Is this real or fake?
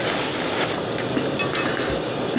real